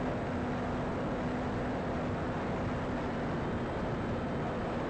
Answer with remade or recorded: recorded